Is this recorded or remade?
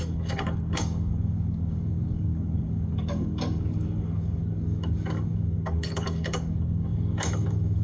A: remade